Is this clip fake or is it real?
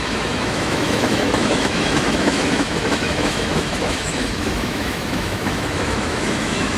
fake